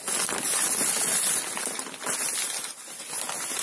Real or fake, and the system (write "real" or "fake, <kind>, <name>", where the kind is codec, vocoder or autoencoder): real